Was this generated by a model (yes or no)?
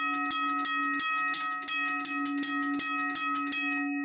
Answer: no